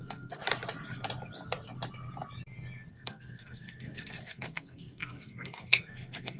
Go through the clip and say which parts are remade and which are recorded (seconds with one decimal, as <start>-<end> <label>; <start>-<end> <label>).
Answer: 0.0-0.4 remade; 0.4-2.9 recorded; 2.9-6.4 remade